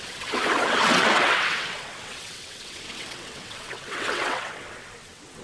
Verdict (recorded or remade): remade